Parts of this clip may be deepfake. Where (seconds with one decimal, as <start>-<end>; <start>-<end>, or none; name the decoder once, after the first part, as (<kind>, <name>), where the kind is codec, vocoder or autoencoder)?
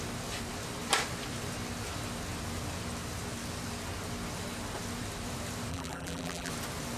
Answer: 5.7-6.5 (vocoder, BigVGAN v2)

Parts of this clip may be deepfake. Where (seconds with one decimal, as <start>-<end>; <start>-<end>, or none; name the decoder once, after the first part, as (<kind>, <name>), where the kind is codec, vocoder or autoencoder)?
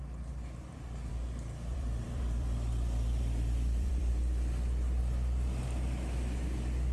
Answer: 1.1-4.1 (vocoder, BigVGAN v2)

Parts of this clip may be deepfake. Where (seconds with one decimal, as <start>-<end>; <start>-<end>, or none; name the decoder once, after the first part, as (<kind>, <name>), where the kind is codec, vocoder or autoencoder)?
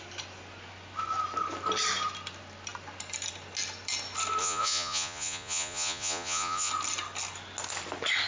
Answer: 4.4-6.7 (vocoder, Vocos)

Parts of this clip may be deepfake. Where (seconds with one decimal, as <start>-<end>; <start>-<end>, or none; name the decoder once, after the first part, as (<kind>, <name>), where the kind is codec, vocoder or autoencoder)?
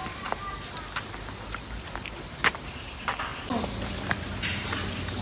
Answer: none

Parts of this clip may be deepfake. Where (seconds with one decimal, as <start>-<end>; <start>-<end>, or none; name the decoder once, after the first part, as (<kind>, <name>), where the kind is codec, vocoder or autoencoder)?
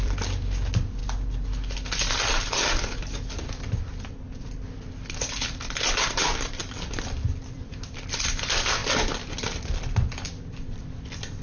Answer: 0.0-1.0 (vocoder, BigVGAN v2); 5.3-11.4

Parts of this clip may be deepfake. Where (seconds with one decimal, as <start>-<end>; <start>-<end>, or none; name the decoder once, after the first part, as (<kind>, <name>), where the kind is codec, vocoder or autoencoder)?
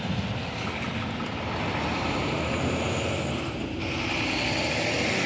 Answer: 1.9-2.8 (vocoder, BigVGAN v2)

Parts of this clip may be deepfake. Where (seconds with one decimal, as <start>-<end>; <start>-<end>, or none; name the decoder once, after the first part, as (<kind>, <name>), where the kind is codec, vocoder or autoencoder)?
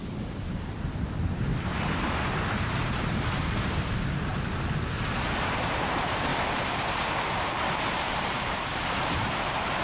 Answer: 0.0-1.5 (vocoder, BigVGAN v2); 2.4-4.3; 5.1-9.8